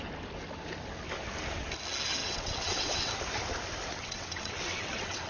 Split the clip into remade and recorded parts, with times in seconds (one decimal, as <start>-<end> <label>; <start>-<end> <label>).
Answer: 0.0-2.2 recorded; 2.2-3.1 remade; 3.1-3.9 recorded; 3.9-5.3 remade